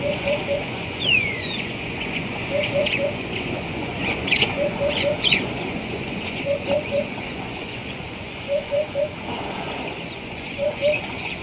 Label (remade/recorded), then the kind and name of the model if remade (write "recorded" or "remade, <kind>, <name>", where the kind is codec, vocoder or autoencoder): remade, vocoder, Vocos